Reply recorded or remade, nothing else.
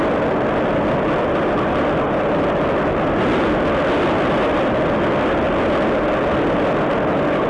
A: recorded